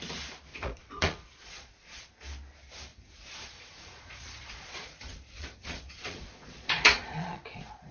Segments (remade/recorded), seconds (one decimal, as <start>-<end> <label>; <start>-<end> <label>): 0.0-0.5 recorded; 0.5-2.2 remade; 2.2-2.9 recorded; 2.9-7.9 remade